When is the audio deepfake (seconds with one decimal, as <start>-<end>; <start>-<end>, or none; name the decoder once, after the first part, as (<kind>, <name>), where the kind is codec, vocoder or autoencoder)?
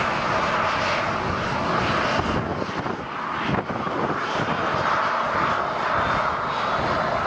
none